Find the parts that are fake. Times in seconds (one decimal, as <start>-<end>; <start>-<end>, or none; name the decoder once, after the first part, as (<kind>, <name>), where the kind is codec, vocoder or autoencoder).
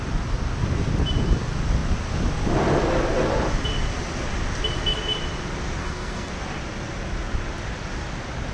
5.8-6.3 (codec, SNAC)